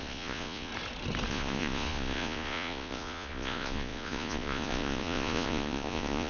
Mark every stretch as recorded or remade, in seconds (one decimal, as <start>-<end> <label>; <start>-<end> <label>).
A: 0.0-0.7 remade; 0.7-1.3 recorded; 1.3-6.3 remade